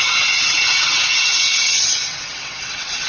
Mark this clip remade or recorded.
remade